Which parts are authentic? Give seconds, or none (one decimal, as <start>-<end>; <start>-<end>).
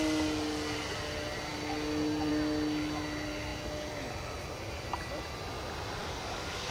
0.0-6.0